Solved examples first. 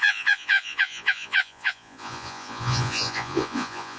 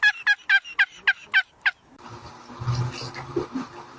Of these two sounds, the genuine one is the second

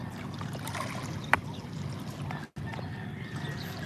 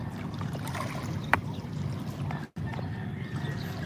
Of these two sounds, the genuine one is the first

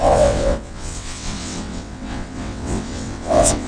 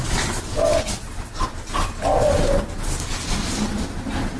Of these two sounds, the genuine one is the second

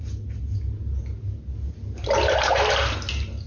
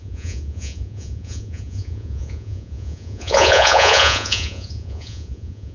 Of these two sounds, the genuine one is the first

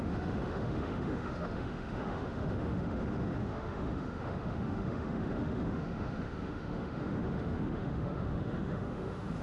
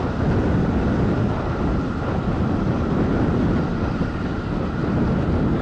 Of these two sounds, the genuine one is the second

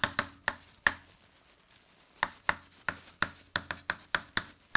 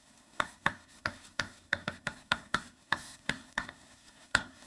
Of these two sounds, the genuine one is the first